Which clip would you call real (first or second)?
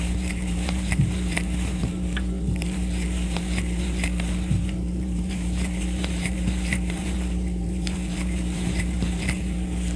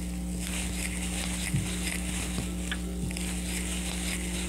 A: second